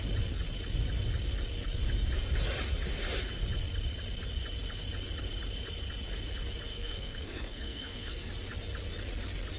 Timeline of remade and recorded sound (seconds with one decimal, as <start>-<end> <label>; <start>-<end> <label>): 0.0-6.7 recorded; 6.7-8.3 remade; 8.3-9.6 recorded